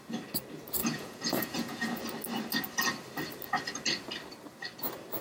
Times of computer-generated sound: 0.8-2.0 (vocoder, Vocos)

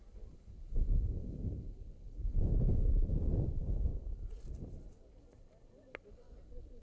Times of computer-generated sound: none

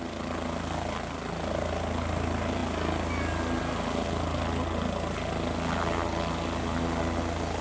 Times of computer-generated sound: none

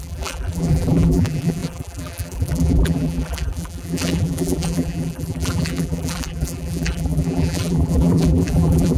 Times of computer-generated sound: 0.0-9.0 (vocoder, BigVGAN v2)

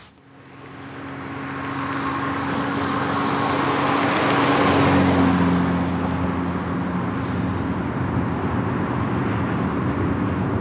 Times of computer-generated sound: 2.1-3.0 (codec, DAC)

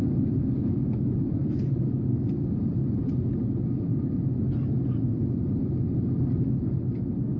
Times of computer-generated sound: 1.4-2.7 (vocoder, BigVGAN v2)

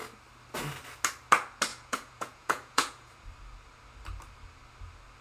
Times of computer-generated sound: 1.7-3.1 (vocoder, Vocos)

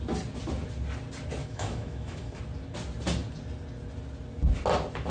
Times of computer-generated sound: 1.4-2.4 (autoencoder, DAC-VAE)